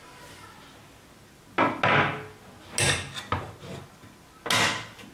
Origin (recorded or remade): recorded